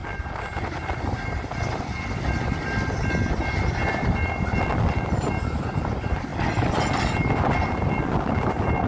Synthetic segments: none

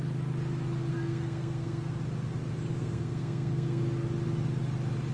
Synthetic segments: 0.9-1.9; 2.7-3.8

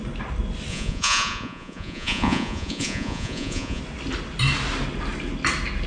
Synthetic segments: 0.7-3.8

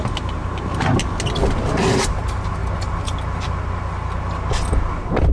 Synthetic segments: none